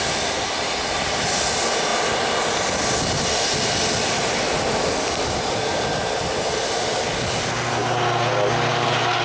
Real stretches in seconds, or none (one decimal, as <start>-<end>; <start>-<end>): 0.0-9.2

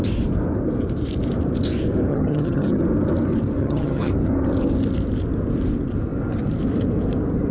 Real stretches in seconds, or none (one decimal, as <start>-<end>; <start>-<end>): 0.0-2.1; 2.8-3.6; 4.1-7.5

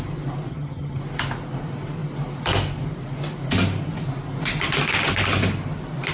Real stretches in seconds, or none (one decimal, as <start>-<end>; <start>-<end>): 0.0-0.5; 1.0-6.1

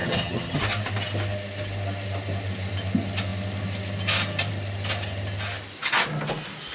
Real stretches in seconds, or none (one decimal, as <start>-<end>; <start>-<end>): 0.6-6.7

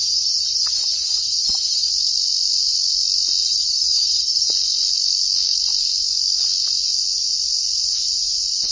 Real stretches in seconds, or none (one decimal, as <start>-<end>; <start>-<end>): 1.9-3.4; 4.5-8.7

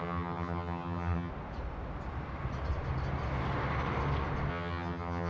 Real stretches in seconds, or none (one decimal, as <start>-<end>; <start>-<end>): 1.3-4.5

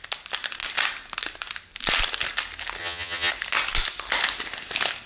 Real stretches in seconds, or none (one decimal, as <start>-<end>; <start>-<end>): 0.0-2.8; 3.3-5.1